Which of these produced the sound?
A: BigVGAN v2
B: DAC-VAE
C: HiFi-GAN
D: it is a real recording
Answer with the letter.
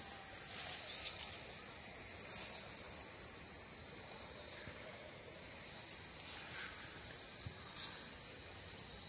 D